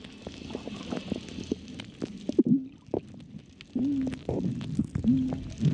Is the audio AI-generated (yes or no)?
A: no